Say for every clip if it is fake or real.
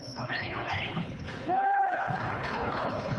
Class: fake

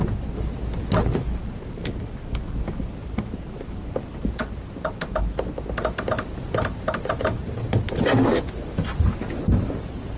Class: real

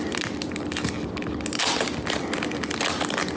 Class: real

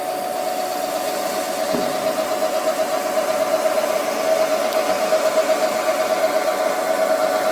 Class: real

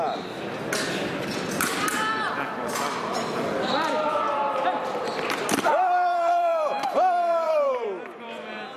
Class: fake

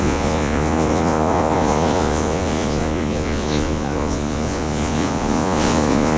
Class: fake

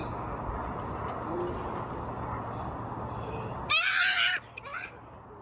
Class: real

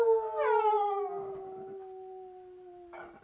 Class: real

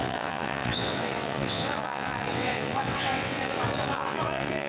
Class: fake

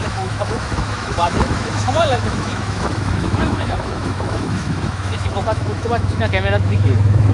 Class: fake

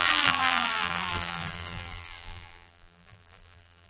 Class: fake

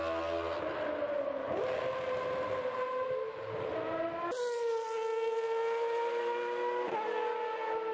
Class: real